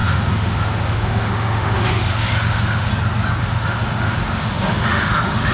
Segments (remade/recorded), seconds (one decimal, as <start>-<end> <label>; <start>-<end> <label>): 0.0-2.9 remade; 2.9-3.4 recorded; 3.4-5.5 remade